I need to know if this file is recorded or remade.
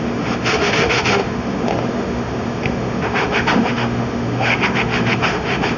remade